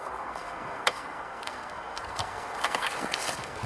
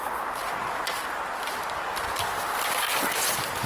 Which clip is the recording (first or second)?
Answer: second